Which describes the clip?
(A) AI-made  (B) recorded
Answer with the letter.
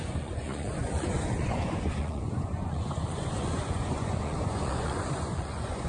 A